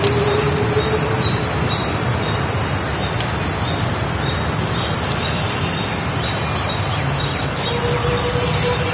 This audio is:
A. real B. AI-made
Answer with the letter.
A